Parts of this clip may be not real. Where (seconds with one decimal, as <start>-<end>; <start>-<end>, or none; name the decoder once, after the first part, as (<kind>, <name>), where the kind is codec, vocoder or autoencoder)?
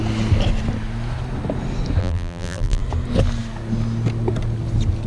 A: 2.0-2.8 (vocoder, BigVGAN v2)